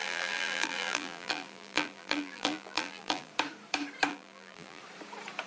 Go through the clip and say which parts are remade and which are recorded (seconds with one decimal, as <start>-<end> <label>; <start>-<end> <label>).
0.0-3.3 remade; 3.3-4.1 recorded; 4.1-4.8 remade; 4.8-5.5 recorded